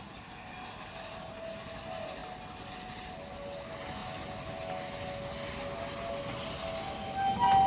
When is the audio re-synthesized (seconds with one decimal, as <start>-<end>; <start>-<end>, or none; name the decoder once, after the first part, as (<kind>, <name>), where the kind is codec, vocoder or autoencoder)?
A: none